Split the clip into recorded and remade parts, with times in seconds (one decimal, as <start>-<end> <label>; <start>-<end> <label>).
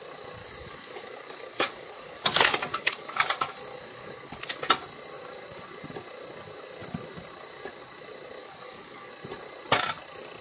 0.0-0.4 recorded; 0.4-4.4 remade; 4.4-8.4 recorded; 8.4-9.1 remade; 9.1-10.4 recorded